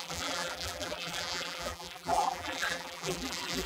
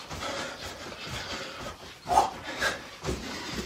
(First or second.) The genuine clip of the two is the second